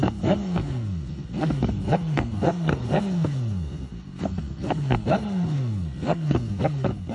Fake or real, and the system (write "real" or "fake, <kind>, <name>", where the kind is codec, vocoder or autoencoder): fake, codec, SNAC